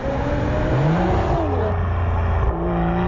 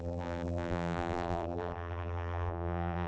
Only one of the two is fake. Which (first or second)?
second